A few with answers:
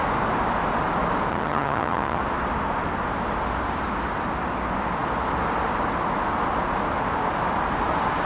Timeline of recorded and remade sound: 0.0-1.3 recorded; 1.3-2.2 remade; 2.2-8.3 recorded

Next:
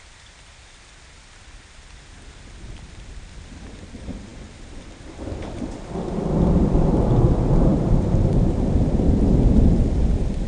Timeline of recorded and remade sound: 0.0-7.7 recorded; 7.7-10.5 remade

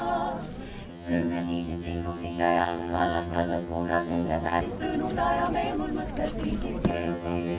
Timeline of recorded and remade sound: 0.0-0.9 recorded; 0.9-4.6 remade; 4.6-6.9 recorded; 6.9-7.6 remade

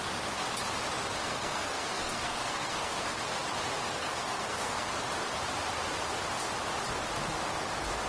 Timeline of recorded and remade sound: 0.0-1.2 recorded; 1.2-3.2 remade; 3.2-4.0 recorded; 4.0-4.9 remade; 4.9-8.1 recorded

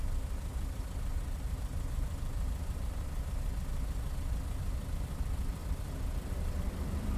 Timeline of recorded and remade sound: 0.0-3.7 remade; 3.7-4.5 recorded; 4.5-5.6 remade; 5.6-6.6 recorded; 6.6-7.2 remade

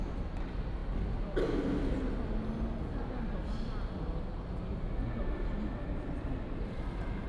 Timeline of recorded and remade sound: 0.0-7.3 recorded

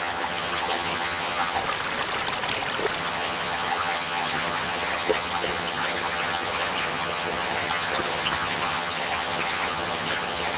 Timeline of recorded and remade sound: 0.0-1.6 remade; 1.6-3.0 recorded; 3.0-10.6 remade

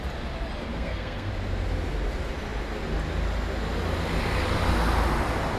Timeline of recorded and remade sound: 0.0-0.7 recorded; 0.7-1.3 remade; 1.3-5.6 recorded